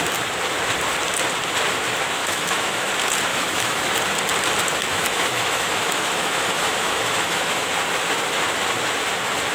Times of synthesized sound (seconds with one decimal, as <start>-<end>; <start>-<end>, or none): 2.2-2.9; 3.3-3.9; 4.9-7.7